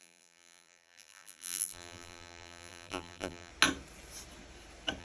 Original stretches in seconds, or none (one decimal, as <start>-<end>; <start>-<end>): 3.5-5.0